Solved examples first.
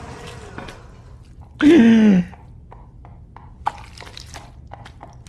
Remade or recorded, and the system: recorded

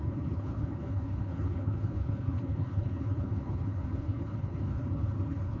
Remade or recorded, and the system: remade, codec, HILCodec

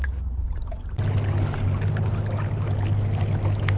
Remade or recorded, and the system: recorded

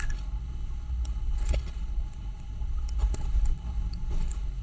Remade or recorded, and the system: remade, codec, HILCodec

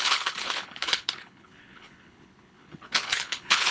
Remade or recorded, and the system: remade, codec, HILCodec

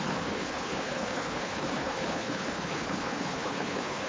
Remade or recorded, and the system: remade, codec, HILCodec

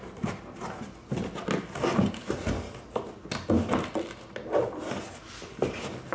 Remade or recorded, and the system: recorded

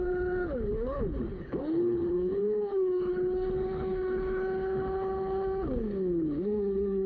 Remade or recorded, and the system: remade, codec, HILCodec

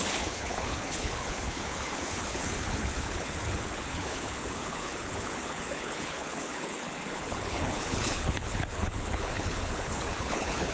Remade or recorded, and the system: remade, codec, HILCodec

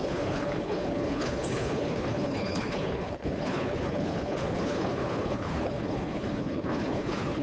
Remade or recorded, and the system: remade, codec, HILCodec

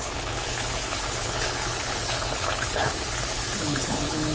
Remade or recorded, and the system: remade, codec, HILCodec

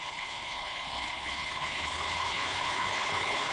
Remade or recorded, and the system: remade, codec, HILCodec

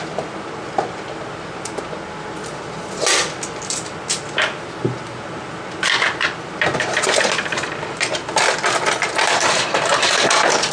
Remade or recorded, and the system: recorded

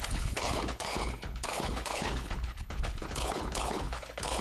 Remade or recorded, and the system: remade, codec, HILCodec